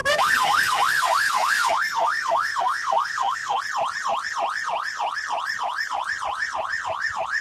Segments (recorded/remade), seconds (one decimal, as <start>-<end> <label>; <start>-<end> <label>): 0.0-3.6 remade; 3.6-7.4 recorded